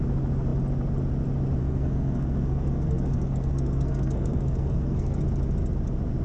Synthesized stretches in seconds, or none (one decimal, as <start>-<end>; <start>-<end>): 1.6-5.2